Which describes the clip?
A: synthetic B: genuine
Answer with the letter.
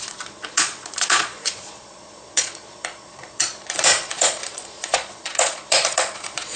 A